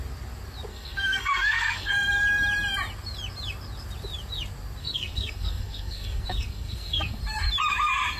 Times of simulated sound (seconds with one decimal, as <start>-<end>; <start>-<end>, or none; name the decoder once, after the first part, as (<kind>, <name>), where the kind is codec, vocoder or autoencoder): 0.7-1.9 (codec, SNAC); 4.8-7.2